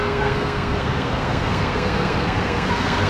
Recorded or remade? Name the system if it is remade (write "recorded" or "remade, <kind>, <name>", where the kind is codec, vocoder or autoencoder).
remade, codec, SNAC